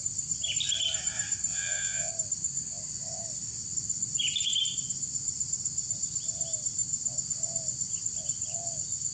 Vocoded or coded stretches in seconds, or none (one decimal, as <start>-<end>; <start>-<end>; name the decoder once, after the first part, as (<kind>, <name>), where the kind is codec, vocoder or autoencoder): 1.5-2.1 (vocoder, WaveNeXt)